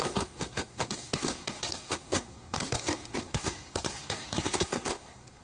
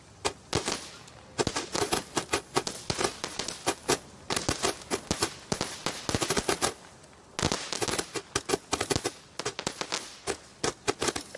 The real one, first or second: second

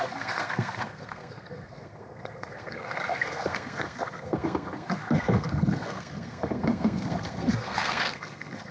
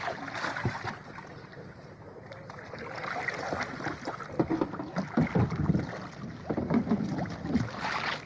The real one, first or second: second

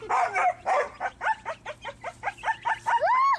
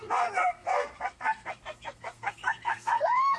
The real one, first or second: first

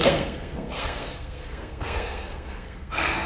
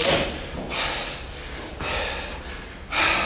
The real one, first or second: second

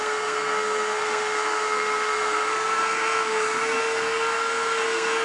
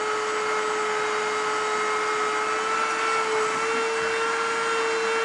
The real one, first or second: second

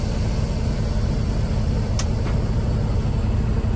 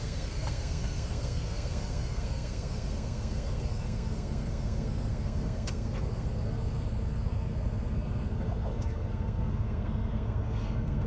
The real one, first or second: first